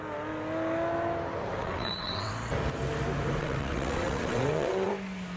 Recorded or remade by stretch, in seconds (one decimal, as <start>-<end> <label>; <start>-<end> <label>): 0.0-1.6 recorded; 1.6-2.3 remade; 2.3-3.4 recorded; 3.4-4.9 remade; 4.9-5.4 recorded